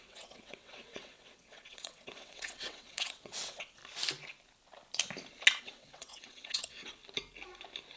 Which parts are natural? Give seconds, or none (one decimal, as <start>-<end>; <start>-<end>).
3.8-5.6; 7.0-8.0